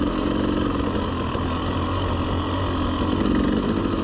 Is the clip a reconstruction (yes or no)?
no